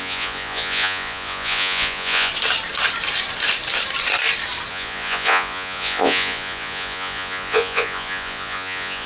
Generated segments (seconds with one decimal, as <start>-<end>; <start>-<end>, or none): 0.0-2.3; 4.7-9.1

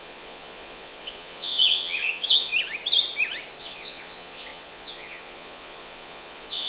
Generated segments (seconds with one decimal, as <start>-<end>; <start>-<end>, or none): 0.0-2.5; 3.6-6.7

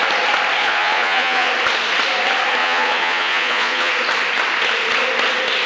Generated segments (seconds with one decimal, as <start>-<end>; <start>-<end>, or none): 0.6-1.5; 2.6-3.9

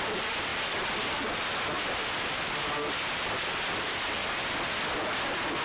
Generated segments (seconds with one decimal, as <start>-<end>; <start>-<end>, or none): none

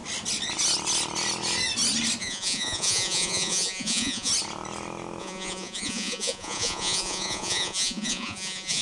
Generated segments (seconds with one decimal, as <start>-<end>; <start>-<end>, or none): 2.2-4.3; 5.2-8.8